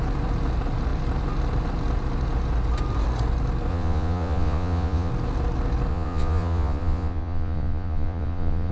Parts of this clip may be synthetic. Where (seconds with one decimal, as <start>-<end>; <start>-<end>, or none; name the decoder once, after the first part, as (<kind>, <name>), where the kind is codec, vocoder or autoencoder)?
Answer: 3.7-5.1 (vocoder, Vocos); 5.9-8.7